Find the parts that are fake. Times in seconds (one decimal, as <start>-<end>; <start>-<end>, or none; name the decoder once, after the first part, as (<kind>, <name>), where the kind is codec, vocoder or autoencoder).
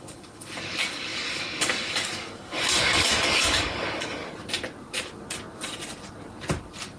0.0-4.2 (codec, DAC)